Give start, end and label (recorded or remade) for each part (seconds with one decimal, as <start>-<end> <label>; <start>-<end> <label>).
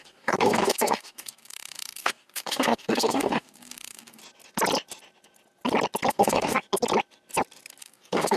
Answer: 0.0-4.2 remade; 4.2-6.1 recorded; 6.1-6.6 remade; 6.6-7.8 recorded; 7.8-8.4 remade